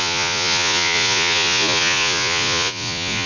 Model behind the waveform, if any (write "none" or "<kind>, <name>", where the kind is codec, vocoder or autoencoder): vocoder, Vocos